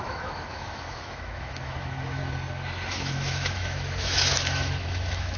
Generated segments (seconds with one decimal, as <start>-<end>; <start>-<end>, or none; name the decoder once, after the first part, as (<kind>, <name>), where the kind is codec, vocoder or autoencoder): 0.0-2.2 (autoencoder, DAC-VAE); 2.9-5.4